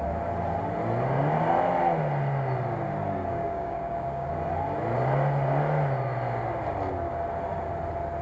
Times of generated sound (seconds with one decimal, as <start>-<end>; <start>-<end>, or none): 3.3-4.3